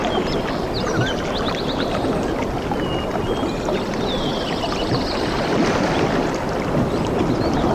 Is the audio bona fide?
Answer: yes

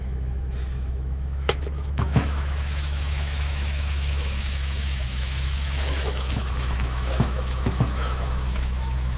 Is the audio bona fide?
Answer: no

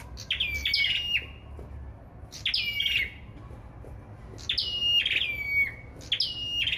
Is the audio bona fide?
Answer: yes